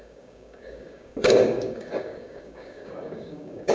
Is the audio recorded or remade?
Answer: remade